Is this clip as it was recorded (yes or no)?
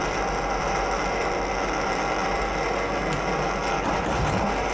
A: yes